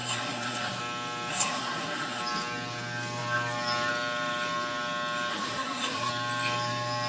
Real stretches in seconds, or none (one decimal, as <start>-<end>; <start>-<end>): 0.8-1.3; 2.2-5.3; 6.1-7.1